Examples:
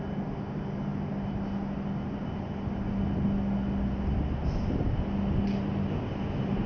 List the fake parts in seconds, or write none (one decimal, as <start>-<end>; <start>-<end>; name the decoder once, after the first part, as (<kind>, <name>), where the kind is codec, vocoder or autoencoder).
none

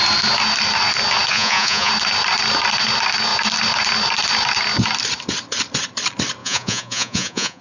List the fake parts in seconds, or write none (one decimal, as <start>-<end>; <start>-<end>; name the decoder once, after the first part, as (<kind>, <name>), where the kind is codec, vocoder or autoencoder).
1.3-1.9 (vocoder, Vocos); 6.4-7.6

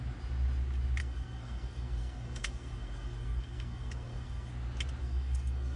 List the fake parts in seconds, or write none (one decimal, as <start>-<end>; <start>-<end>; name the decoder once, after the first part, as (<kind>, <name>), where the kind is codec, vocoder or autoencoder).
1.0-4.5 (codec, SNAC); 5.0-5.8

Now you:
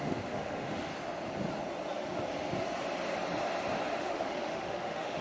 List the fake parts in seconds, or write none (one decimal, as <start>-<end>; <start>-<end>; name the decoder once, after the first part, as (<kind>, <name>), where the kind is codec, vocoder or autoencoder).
0.0-0.9 (autoencoder, DAC-VAE); 4.0-5.2

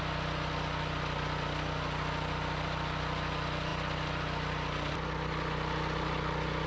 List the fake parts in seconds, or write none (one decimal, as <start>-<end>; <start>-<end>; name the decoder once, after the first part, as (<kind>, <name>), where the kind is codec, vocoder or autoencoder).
none

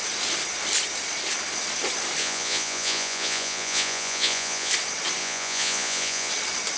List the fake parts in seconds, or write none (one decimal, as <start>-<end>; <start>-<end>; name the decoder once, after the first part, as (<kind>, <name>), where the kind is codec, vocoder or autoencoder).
2.2-4.7 (vocoder, Vocos); 5.2-6.3

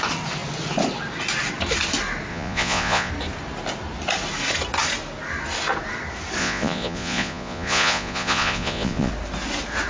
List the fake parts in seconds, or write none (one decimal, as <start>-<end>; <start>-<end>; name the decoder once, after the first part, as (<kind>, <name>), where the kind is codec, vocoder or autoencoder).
2.3-3.1 (vocoder, Vocos); 6.4-9.1